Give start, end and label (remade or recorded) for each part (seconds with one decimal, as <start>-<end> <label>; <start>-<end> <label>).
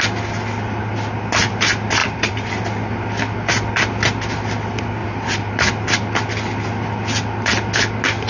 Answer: 0.0-2.0 recorded; 2.0-2.5 remade; 2.5-5.0 recorded; 5.0-5.5 remade; 5.5-8.3 recorded